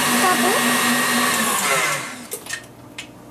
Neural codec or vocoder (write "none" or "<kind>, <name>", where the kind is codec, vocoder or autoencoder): none